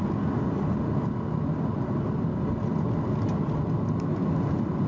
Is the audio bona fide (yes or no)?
yes